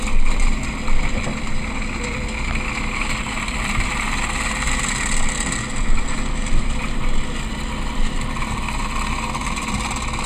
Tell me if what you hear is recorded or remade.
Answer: recorded